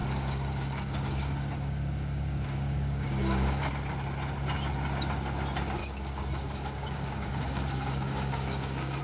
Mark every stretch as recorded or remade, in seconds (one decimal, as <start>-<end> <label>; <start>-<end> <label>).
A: 0.0-3.7 remade; 3.7-5.8 recorded; 5.8-9.0 remade